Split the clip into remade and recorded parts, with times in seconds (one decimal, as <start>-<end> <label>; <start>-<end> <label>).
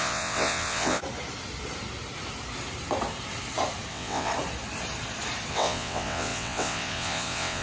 0.0-1.0 remade; 1.0-3.9 recorded; 3.9-4.3 remade; 4.3-5.5 recorded; 5.5-7.6 remade